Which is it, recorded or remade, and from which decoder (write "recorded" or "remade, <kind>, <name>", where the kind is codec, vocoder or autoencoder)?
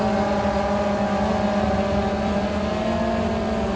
recorded